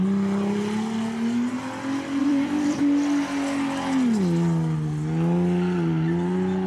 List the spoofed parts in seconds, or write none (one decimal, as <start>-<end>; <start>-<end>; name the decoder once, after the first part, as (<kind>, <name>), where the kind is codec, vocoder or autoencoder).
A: 2.2-2.8 (vocoder, BigVGAN v2)